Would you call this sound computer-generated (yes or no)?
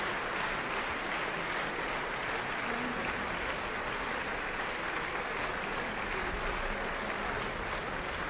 no